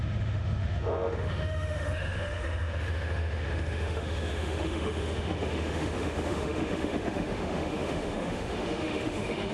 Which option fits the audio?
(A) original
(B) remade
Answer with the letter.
B